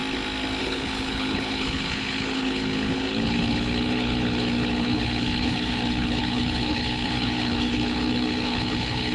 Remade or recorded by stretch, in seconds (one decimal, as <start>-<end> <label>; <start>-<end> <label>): 0.0-0.6 recorded; 0.6-9.1 remade